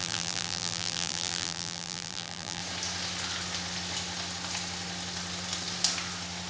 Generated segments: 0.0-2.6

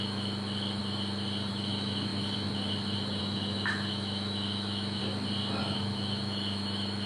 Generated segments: 0.0-0.8; 1.5-2.1; 3.2-5.0; 5.6-7.1

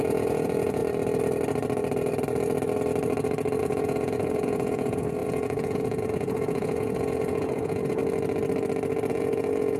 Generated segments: 0.0-0.8; 3.6-8.0; 9.1-9.8

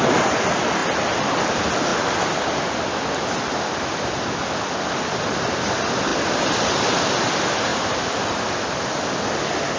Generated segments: 7.7-8.4

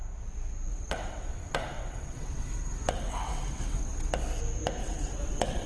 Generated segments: 0.7-4.1; 4.8-5.7